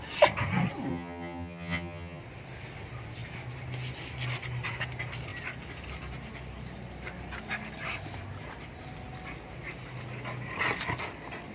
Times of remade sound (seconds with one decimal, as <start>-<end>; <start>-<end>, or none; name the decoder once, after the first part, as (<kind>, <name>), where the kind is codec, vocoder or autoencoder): 0.9-2.2 (vocoder, HiFi-GAN)